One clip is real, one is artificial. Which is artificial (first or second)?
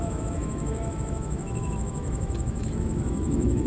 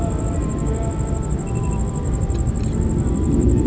first